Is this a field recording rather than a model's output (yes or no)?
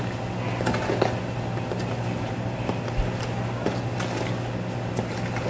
yes